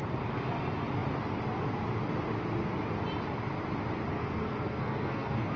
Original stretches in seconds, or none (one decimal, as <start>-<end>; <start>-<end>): 0.0-4.1